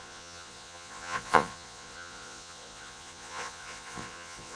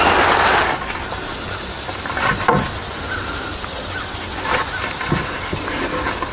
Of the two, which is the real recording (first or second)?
second